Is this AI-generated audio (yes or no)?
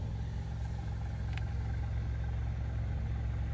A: no